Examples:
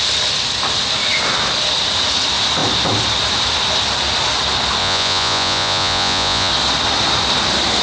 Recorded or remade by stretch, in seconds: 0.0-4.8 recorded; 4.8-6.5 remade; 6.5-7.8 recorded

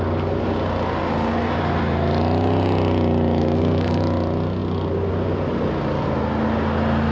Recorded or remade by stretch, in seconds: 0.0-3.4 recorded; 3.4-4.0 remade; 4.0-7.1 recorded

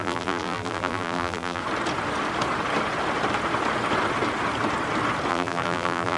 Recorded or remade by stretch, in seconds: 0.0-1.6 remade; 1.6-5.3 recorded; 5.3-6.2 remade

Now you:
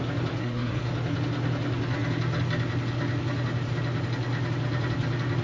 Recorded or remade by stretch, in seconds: 0.0-0.4 recorded; 0.4-0.9 remade; 0.9-5.4 recorded